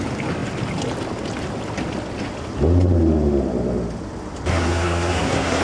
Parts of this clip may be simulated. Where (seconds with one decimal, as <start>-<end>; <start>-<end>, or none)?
4.5-5.6